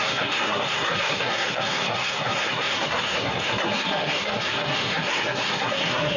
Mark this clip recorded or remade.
remade